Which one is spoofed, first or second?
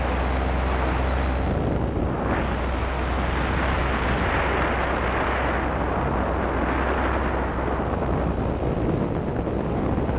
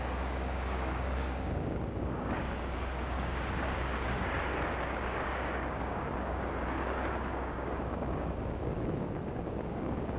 second